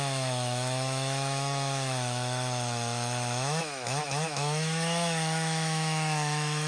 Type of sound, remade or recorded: remade